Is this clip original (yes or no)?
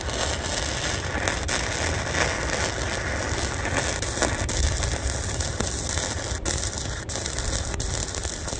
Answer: yes